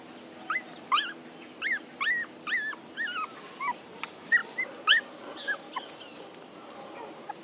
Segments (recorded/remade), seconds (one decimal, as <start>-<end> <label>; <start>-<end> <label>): 0.0-7.4 recorded